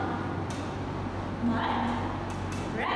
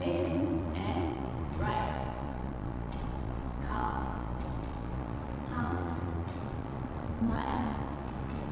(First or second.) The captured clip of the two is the first